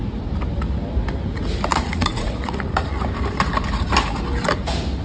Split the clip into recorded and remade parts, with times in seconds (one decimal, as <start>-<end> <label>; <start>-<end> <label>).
0.0-1.7 recorded; 1.7-3.0 remade; 3.0-5.0 recorded